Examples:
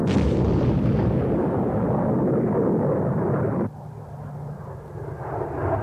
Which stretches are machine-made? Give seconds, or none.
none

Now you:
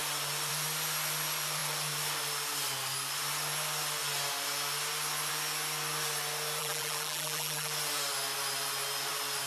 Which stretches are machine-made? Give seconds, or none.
6.6-7.7 (vocoder, BigVGAN v2)

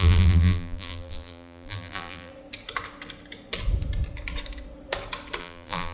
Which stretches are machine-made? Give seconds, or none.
0.0-2.3 (vocoder, BigVGAN v2); 5.4-5.9

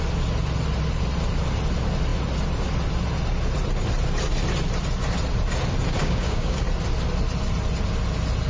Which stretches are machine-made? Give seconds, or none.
6.0-6.6 (codec, DAC)

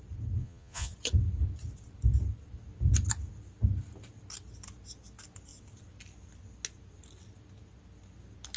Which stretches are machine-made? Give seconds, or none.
0.4-0.9 (vocoder, Vocos)